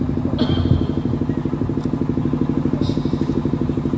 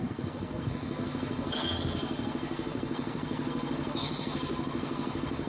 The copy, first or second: second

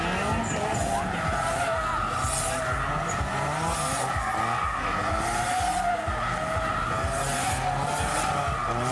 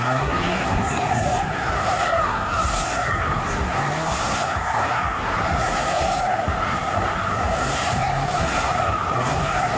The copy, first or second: second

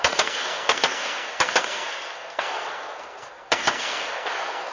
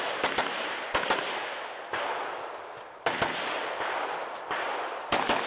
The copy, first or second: first